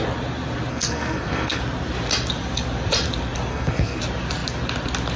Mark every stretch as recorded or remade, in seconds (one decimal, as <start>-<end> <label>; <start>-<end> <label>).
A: 0.0-0.7 recorded; 0.7-1.6 remade; 1.6-3.5 recorded; 3.5-4.0 remade; 4.0-5.2 recorded